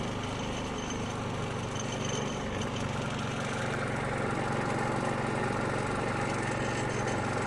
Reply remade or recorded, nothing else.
recorded